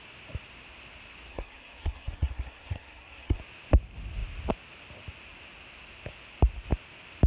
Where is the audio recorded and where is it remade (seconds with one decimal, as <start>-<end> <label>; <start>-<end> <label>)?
0.0-1.3 recorded; 1.3-3.4 remade; 3.4-7.3 recorded